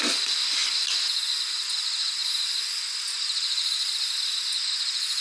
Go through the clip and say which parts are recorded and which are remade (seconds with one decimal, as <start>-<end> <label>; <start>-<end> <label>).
0.0-5.2 recorded